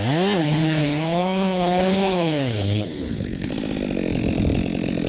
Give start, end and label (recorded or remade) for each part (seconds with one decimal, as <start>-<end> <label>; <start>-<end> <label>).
0.0-0.4 recorded; 0.4-3.5 remade; 3.5-5.1 recorded